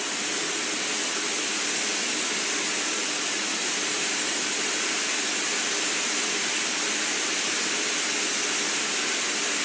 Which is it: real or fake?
real